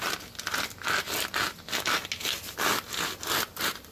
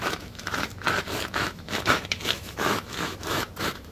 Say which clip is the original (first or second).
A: first